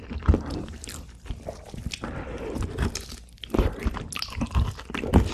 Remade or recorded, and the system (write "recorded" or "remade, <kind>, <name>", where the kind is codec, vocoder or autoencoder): recorded